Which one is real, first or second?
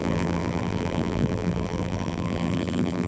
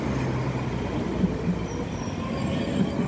second